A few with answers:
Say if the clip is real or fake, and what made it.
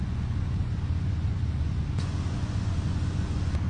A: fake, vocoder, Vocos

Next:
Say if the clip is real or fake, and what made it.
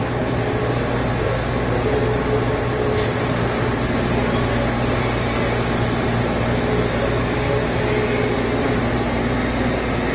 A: real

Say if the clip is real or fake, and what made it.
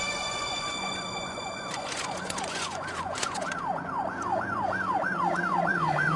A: fake, vocoder, Vocos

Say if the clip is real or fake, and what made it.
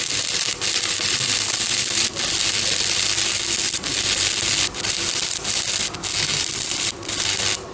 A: real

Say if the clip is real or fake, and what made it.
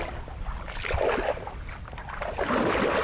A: real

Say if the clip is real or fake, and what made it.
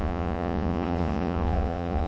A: fake, vocoder, Vocos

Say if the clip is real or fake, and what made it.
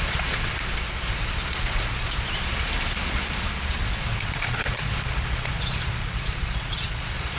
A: fake, vocoder, Vocos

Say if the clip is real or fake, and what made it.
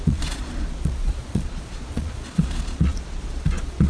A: fake, vocoder, Vocos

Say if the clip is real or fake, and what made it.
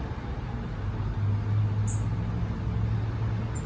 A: real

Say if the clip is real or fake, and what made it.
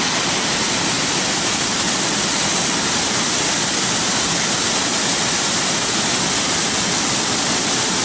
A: real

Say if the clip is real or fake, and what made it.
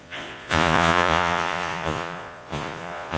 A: fake, vocoder, Vocos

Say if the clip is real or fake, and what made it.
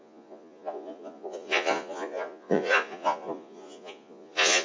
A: fake, vocoder, Vocos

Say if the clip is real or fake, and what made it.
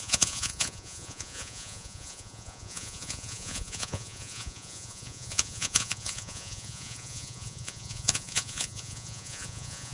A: fake, vocoder, Vocos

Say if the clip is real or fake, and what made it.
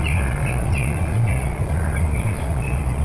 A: fake, vocoder, Vocos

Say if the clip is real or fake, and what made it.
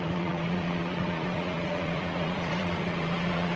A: fake, vocoder, Vocos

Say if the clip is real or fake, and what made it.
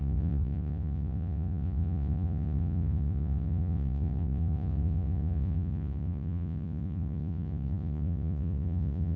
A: fake, vocoder, Vocos